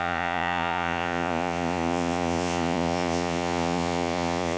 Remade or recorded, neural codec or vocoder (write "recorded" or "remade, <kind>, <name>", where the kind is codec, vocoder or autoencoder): remade, vocoder, Vocos